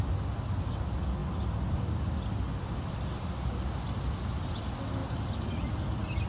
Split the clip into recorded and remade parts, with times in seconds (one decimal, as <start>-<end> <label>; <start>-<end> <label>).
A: 0.0-6.3 recorded